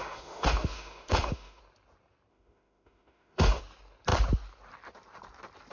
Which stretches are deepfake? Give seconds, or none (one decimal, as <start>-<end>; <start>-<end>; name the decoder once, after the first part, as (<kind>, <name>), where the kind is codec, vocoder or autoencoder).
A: 0.0-1.6 (autoencoder, DAC-VAE); 2.3-3.6